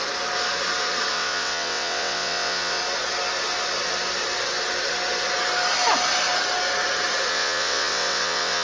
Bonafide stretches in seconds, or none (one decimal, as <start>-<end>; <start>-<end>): 0.0-1.1; 2.8-7.3

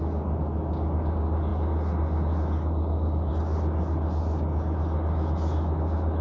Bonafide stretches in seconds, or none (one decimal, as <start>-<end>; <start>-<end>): 0.0-6.2

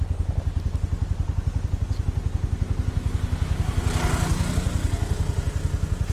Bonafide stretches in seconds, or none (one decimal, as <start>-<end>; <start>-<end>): 0.0-6.1

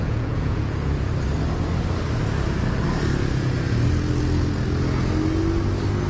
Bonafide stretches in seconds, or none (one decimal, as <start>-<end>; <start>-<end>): 1.1-6.1

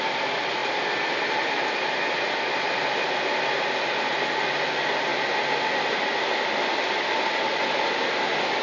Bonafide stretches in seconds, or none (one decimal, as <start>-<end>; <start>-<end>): 0.0-8.6

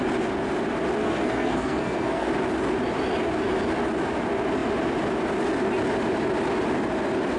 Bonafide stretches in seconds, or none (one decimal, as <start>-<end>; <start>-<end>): 0.0-1.0; 2.3-7.4